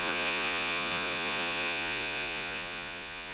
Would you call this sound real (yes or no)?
no